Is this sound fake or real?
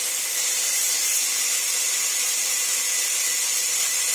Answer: real